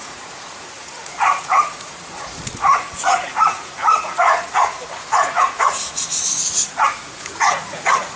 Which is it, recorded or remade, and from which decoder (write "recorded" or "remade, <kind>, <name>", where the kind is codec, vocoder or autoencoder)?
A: remade, vocoder, Vocos